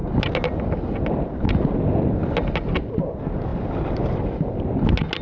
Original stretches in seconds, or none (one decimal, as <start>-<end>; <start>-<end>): 0.0-5.2